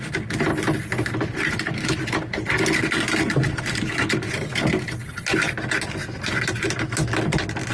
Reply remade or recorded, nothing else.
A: recorded